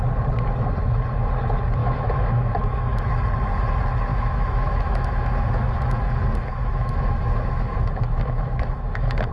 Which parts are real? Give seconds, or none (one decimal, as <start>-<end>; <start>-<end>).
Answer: 0.0-1.8; 3.1-4.1